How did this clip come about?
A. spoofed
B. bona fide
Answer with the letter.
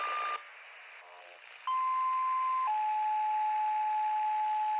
B